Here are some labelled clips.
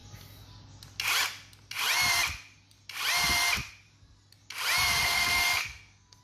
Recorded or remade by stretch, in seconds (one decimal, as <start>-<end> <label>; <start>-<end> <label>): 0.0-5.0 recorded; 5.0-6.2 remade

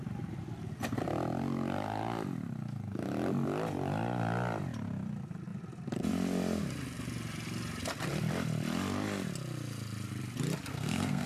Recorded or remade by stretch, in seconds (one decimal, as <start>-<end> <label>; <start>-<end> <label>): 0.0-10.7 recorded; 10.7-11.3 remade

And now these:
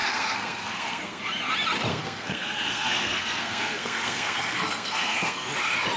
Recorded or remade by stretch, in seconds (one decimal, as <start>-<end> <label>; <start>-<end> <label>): 0.0-1.2 remade; 1.2-1.9 recorded; 1.9-5.5 remade; 5.5-6.0 recorded

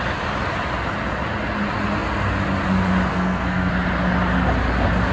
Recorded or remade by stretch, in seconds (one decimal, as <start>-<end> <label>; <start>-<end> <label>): 0.0-3.1 recorded; 3.1-3.7 remade; 3.7-5.1 recorded